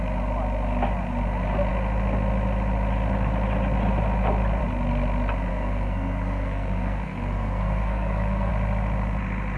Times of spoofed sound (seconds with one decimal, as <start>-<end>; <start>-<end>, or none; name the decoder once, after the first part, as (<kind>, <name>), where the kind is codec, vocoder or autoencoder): 5.5-8.5 (codec, SNAC)